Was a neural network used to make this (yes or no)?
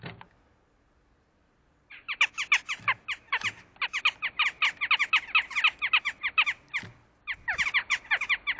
no